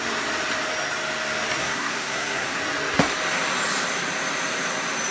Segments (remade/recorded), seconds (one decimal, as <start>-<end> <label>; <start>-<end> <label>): 0.0-1.6 recorded; 1.6-2.6 remade; 2.6-5.1 recorded